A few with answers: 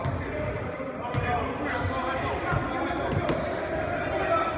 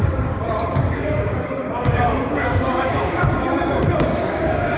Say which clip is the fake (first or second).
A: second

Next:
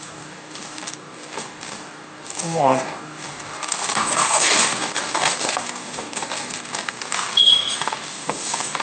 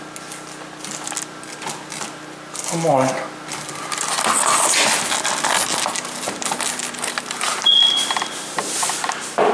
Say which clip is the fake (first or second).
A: first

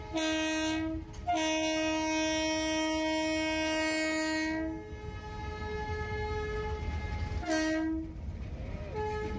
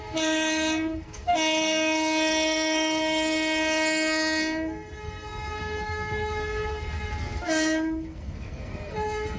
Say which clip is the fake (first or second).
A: second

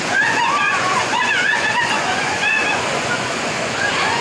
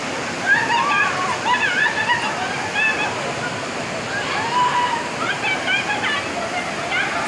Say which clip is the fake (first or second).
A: first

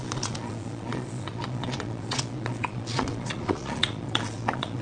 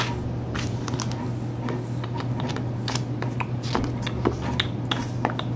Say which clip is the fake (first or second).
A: first